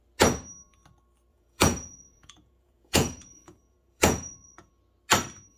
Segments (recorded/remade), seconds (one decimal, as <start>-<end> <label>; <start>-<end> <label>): 0.0-1.3 recorded; 1.3-4.7 remade; 4.7-5.6 recorded